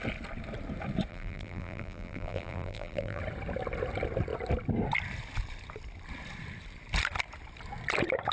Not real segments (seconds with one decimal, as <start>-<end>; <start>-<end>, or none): 1.1-3.2